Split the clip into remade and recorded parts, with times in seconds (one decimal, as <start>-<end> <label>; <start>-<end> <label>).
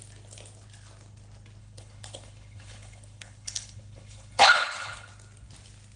0.0-1.6 recorded; 1.6-5.1 remade; 5.1-6.0 recorded